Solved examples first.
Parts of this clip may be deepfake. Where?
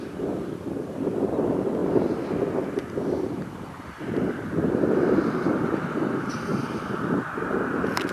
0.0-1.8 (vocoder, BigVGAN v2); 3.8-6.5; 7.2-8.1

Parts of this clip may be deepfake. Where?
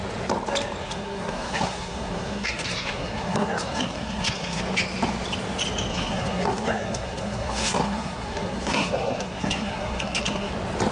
0.8-4.6 (codec, SNAC); 5.9-10.5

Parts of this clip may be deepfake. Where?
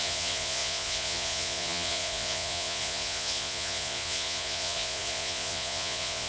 0.0-6.3 (vocoder, Vocos)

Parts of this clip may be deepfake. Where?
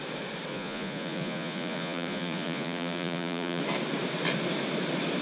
0.5-3.6 (vocoder, Vocos)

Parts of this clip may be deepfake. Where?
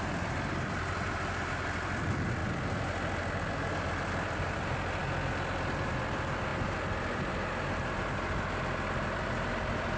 0.0-2.4 (vocoder, BigVGAN v2); 3.7-5.0; 5.9-6.5; 8.9-10.0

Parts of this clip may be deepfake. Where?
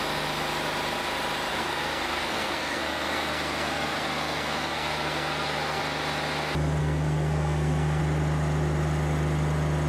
1.5-5.8 (codec, SNAC); 6.8-8.0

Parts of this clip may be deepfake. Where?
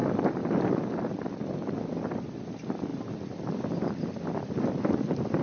none